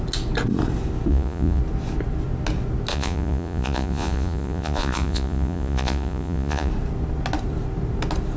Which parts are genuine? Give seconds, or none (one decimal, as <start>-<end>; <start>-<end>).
0.0-1.1; 1.6-2.9; 6.7-8.4